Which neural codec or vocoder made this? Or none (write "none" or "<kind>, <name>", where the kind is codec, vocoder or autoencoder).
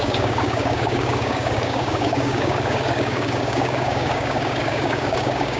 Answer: codec, DAC